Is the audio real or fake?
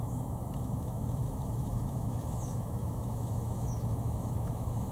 fake